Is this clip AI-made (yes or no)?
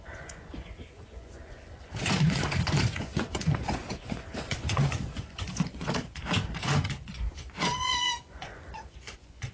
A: yes